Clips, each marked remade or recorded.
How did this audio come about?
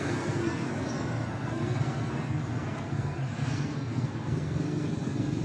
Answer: remade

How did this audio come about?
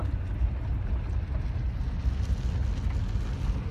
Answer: recorded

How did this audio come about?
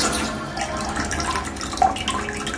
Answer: recorded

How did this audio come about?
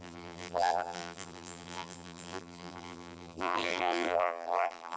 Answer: remade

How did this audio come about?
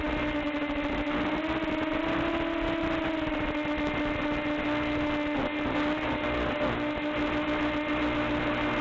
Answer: recorded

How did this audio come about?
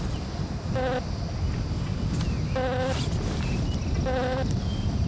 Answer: recorded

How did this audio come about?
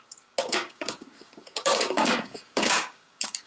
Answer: remade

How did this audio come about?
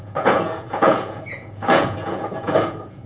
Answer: remade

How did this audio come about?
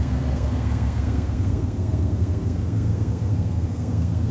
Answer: remade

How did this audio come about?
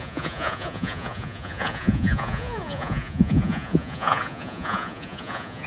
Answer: remade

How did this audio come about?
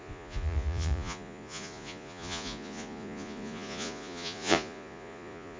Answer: remade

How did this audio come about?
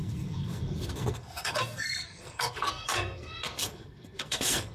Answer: remade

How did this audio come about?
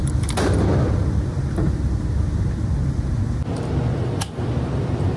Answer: recorded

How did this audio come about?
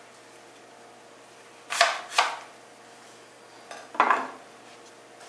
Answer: recorded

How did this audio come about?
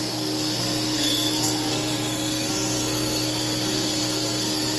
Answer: remade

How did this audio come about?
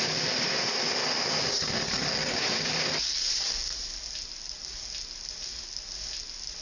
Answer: recorded